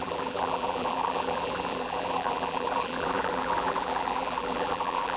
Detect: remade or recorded remade